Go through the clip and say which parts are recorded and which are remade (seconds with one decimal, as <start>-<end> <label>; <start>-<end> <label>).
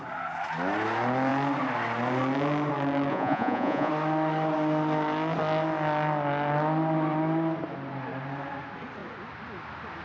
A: 0.0-3.1 recorded; 3.1-3.9 remade; 3.9-10.0 recorded